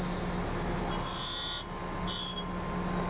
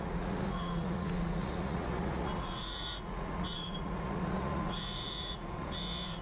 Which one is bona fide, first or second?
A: first